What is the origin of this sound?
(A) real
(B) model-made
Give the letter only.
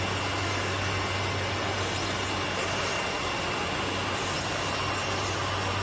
A